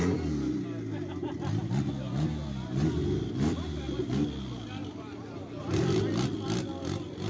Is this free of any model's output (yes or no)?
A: yes